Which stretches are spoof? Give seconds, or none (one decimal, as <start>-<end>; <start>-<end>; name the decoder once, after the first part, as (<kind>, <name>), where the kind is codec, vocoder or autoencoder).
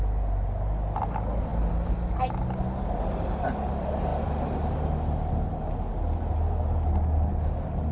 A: none